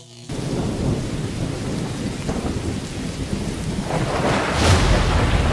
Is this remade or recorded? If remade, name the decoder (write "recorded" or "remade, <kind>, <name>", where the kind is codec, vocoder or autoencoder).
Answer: recorded